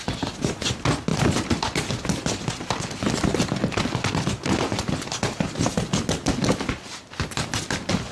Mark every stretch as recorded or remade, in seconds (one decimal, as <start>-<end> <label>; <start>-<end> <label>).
0.0-1.1 recorded; 1.1-1.9 remade; 1.9-8.1 recorded